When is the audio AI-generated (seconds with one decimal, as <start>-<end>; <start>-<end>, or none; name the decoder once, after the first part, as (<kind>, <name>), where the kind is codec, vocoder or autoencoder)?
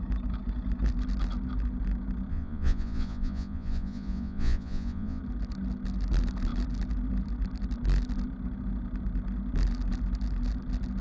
2.3-5.2 (vocoder, Vocos)